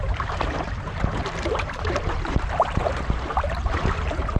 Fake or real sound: fake